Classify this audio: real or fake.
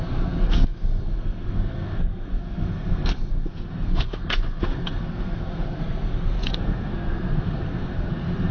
fake